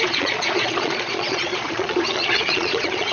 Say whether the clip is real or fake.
fake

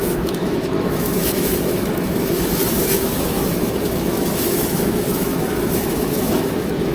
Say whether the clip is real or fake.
fake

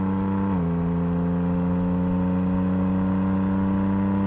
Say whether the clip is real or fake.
real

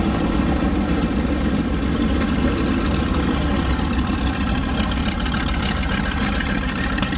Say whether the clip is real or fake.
real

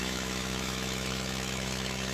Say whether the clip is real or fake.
fake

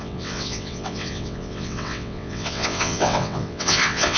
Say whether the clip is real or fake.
fake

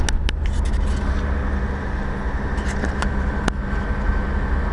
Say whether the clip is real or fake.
real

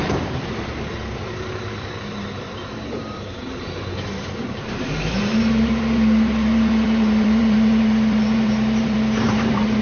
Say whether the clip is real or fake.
fake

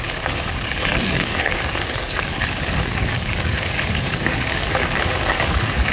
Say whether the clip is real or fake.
fake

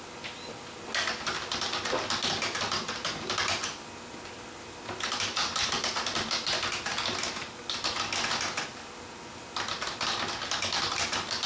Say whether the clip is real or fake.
real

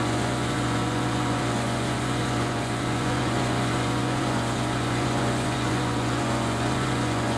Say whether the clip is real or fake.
fake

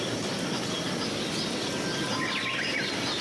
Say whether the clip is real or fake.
real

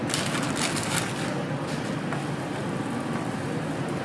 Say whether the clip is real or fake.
real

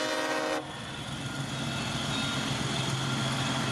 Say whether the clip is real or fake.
real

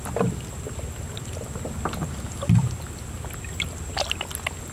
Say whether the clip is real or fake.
real